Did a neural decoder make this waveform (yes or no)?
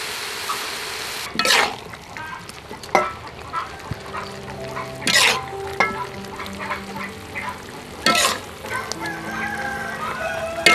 no